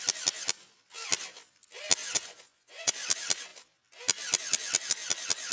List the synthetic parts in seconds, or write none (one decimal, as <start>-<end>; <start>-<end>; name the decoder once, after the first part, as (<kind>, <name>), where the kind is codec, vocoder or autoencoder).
2.0-2.9 (vocoder, Vocos)